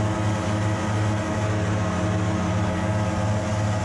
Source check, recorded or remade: recorded